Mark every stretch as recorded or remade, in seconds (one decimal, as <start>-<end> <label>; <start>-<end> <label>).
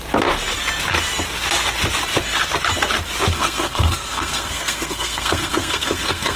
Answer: 0.0-3.3 recorded; 3.3-6.4 remade